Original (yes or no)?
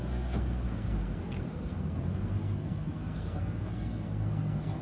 no